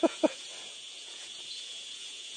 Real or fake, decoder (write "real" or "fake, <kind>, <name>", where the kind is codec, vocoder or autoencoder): fake, vocoder, Vocos